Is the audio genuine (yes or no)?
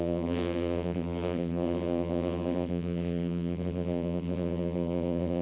no